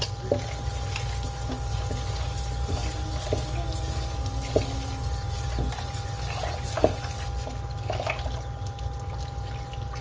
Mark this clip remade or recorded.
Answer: recorded